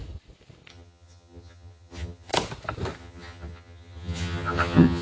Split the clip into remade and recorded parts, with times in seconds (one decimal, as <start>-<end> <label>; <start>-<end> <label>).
0.0-0.7 recorded; 0.7-2.3 remade; 2.3-3.0 recorded; 3.0-5.0 remade